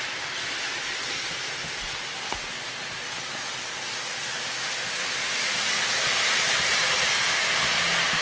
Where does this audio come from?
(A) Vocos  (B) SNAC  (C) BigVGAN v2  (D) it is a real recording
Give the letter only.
D